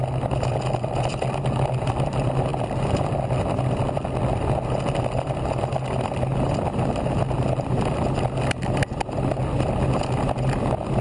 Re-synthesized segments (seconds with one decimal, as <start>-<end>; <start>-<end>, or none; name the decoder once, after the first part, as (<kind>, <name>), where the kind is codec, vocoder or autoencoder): none